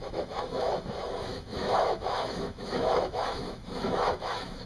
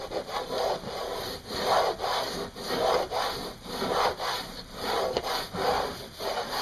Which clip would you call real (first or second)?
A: second